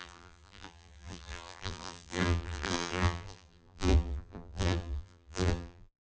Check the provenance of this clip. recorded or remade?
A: remade